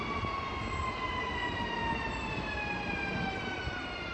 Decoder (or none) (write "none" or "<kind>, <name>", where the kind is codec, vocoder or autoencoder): none